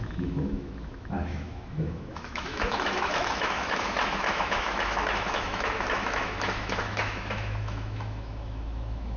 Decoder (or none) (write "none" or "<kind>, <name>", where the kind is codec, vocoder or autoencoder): autoencoder, DAC-VAE